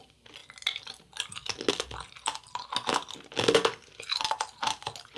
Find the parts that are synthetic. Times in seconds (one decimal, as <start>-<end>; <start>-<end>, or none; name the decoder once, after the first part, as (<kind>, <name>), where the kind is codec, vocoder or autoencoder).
none